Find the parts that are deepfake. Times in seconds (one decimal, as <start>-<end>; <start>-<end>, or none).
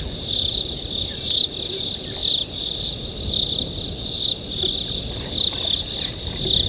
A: none